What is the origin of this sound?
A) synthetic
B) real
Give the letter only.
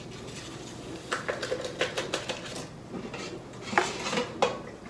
B